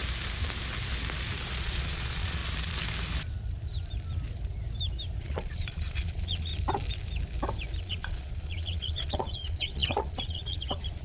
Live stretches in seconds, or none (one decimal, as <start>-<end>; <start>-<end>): 0.0-1.6; 2.4-5.2; 6.5-7.8